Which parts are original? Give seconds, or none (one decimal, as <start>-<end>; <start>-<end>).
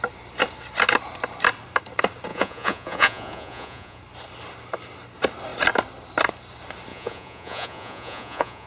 0.0-2.3; 4.0-6.9